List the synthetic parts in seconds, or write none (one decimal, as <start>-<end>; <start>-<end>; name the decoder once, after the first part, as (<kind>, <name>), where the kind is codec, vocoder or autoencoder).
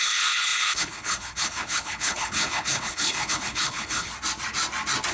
0.0-4.1 (codec, HILCodec)